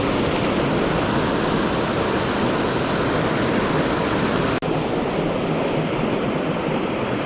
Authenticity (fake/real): real